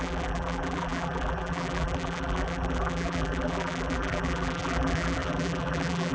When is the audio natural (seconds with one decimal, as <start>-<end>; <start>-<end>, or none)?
none